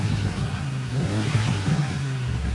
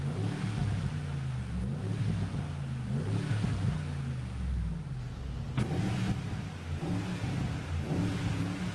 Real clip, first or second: second